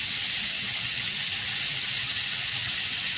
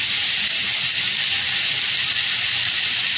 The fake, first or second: first